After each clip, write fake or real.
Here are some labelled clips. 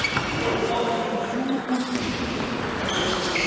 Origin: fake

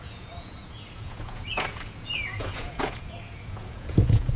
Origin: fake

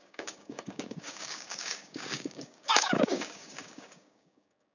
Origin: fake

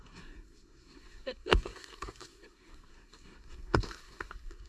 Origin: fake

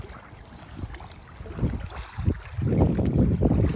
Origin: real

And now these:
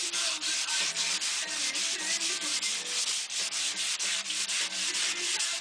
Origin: fake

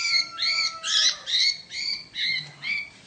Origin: real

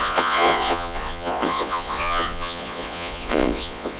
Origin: fake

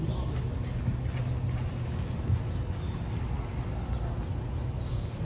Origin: real